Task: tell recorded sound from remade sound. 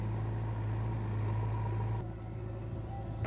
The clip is recorded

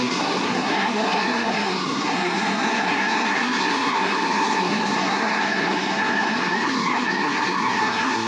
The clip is remade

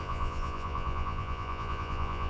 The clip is remade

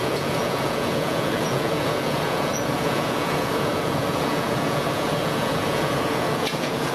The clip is remade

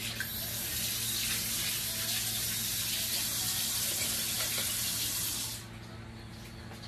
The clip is recorded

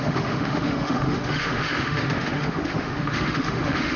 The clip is remade